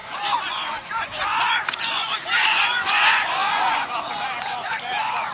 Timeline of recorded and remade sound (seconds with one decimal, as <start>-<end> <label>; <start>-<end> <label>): 0.0-5.3 remade